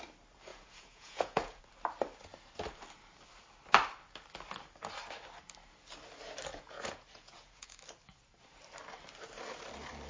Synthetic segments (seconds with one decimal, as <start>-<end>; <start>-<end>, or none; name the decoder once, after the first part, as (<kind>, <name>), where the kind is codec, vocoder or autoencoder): 0.5-1.6 (vocoder, Vocos); 6.5-7.7

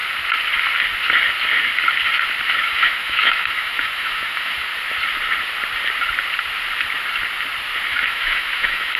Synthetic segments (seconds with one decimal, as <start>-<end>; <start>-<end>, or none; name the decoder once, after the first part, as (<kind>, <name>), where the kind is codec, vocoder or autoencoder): 2.6-4.7 (autoencoder, DAC-VAE); 7.9-9.0

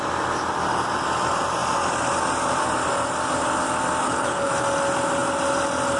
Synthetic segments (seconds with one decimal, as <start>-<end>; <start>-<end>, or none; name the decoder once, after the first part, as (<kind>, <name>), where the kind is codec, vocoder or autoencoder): 4.0-4.5 (codec, HILCodec)

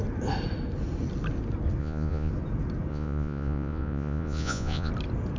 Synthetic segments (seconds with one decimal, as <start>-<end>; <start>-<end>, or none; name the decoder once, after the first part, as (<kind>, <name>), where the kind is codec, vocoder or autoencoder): 1.8-2.3 (vocoder, Vocos); 2.9-4.9

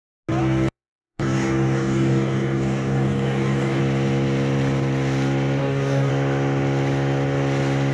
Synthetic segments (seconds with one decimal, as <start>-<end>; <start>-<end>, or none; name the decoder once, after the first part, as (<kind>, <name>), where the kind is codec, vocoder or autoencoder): 0.4-3.8 (codec, DAC); 5.6-6.1